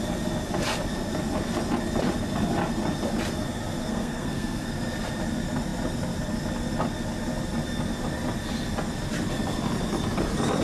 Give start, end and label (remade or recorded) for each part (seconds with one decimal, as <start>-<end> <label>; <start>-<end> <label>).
0.0-3.8 recorded; 3.8-4.7 remade; 4.7-10.6 recorded